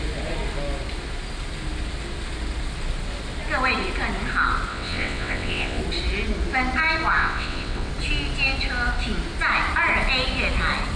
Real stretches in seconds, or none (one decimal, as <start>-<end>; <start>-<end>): 0.0-4.7; 5.8-7.2; 7.9-11.0